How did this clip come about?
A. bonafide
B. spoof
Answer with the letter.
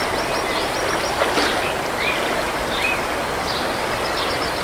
A